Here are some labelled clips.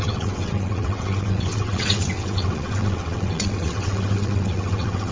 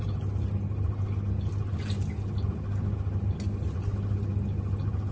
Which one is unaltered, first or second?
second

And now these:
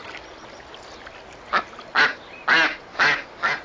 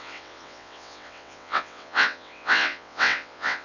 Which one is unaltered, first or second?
first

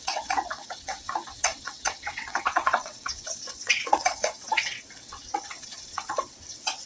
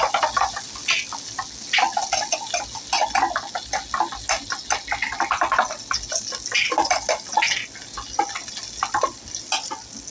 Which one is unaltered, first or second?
second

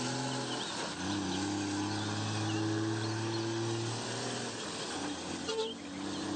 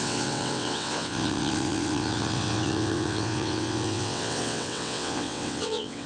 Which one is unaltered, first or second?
first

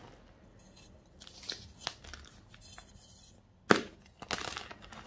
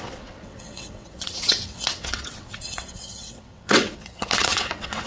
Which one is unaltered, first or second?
first